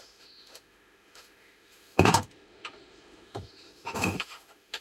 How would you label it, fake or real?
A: fake